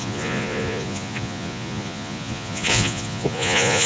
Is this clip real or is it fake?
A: fake